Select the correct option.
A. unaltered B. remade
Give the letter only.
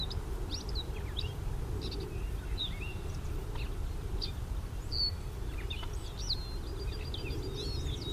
A